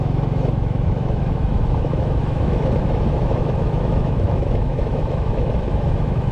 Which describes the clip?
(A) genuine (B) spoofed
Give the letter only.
B